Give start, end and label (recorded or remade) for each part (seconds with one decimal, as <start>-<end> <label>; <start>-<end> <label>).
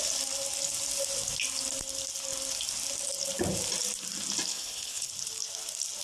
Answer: 0.0-4.5 recorded; 4.5-5.1 remade; 5.1-6.0 recorded